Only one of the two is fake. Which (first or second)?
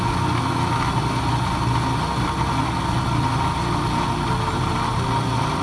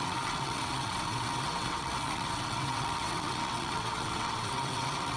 second